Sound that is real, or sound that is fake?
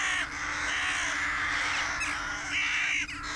real